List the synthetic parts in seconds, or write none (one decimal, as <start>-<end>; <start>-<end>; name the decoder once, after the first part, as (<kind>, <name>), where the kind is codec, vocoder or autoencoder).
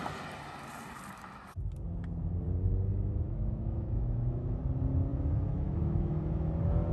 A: 2.9-4.6 (autoencoder, DAC-VAE); 5.1-6.5